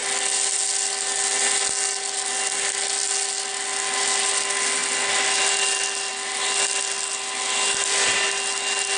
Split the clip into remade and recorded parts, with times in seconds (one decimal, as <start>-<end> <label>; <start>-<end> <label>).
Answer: 0.0-9.0 recorded